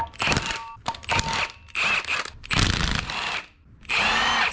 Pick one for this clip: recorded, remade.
recorded